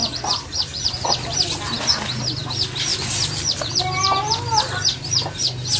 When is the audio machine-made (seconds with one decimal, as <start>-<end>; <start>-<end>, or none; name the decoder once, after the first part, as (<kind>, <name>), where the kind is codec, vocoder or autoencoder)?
0.0-1.9 (vocoder, BigVGAN v2); 2.9-4.5